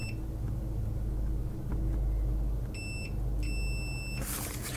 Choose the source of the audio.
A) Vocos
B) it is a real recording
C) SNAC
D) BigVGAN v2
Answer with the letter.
B